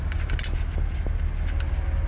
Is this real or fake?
real